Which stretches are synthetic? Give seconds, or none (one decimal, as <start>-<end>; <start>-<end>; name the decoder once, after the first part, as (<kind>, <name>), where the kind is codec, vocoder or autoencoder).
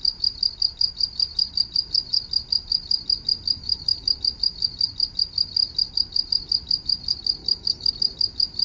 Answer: 3.6-4.2 (autoencoder, DAC-VAE); 7.4-7.9